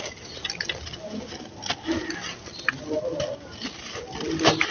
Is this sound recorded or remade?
recorded